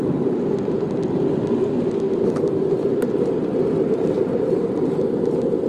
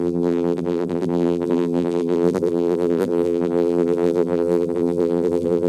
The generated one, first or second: second